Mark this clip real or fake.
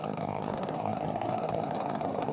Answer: fake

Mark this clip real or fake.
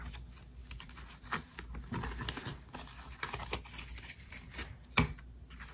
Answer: real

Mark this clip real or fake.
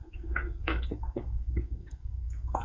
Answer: fake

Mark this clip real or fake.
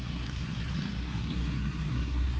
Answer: fake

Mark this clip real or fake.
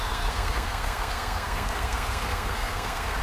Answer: fake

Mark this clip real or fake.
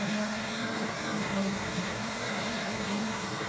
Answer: fake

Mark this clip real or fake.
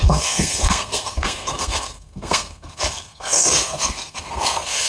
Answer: fake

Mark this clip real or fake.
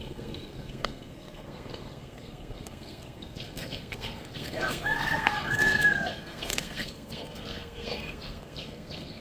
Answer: fake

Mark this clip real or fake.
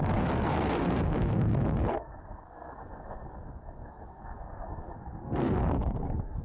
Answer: fake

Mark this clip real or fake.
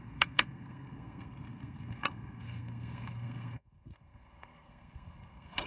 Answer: fake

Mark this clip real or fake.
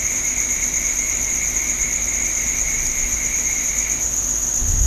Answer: real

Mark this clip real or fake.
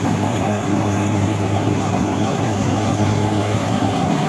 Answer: fake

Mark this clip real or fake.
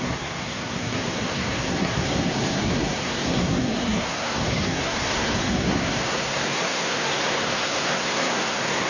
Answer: fake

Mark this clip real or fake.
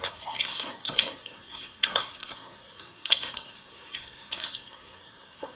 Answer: fake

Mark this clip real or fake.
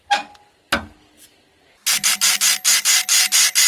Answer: real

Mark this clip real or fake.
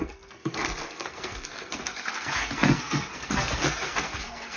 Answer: fake